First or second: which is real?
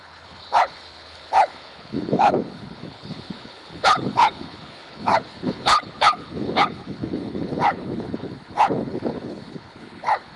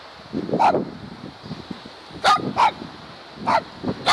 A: second